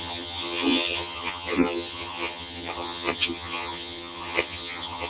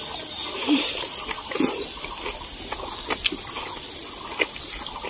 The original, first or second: second